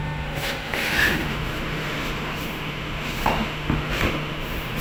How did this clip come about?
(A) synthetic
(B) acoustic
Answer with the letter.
A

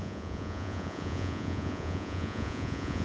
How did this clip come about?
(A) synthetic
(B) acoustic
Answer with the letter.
A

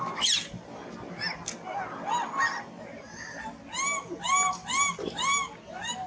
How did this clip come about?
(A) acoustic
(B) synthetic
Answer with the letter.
A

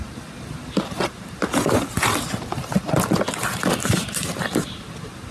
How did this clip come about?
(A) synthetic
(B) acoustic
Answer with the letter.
B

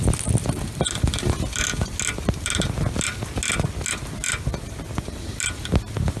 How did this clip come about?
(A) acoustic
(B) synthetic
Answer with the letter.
A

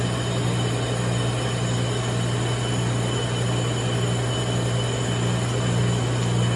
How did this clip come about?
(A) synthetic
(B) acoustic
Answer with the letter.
B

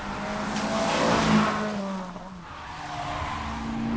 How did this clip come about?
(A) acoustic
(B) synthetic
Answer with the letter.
A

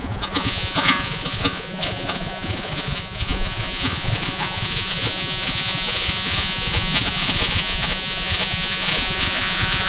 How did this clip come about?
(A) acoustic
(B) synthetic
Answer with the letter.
B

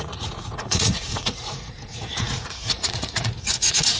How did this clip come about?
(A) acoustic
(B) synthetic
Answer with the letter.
B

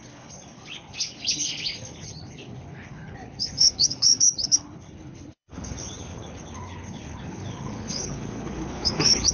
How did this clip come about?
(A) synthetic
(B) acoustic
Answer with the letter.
A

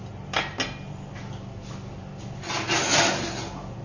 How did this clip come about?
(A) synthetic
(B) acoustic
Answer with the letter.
B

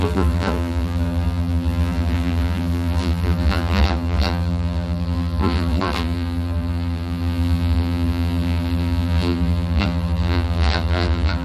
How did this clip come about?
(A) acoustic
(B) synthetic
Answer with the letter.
B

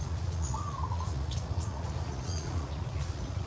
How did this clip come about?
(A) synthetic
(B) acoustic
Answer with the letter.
A